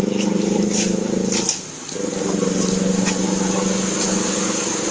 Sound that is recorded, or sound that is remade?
recorded